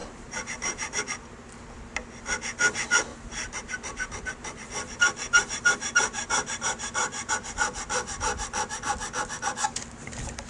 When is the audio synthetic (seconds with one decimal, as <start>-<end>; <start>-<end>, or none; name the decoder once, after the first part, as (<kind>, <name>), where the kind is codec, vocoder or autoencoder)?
0.0-1.0 (vocoder, BigVGAN v2); 3.1-7.3